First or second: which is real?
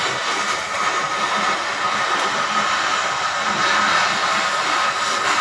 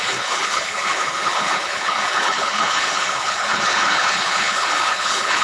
first